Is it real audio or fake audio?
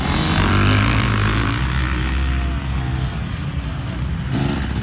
real